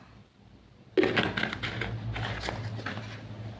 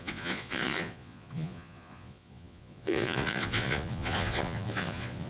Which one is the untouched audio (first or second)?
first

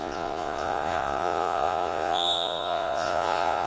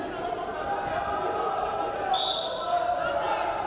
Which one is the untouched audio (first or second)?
second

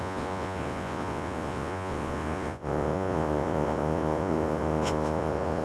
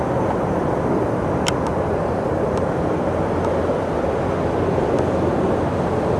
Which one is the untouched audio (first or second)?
second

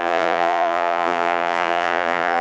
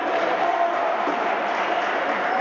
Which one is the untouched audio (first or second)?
second